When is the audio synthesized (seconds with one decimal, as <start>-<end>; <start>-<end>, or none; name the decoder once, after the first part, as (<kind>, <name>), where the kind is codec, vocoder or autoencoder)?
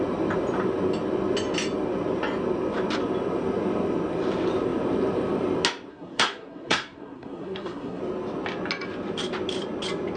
5.9-8.0 (codec, SNAC)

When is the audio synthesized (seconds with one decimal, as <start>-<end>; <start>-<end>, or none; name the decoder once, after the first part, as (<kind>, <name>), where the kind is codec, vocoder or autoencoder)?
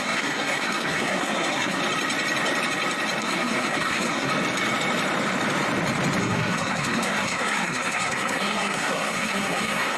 0.0-1.8 (codec, SNAC); 3.2-4.3; 6.2-10.0